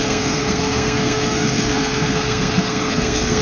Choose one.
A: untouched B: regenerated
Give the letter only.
B